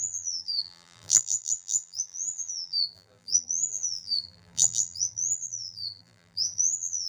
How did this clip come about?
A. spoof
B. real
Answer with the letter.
A